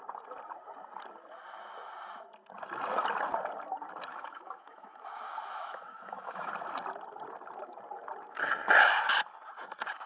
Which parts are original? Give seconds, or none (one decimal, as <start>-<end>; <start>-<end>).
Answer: 0.0-4.1; 6.5-10.1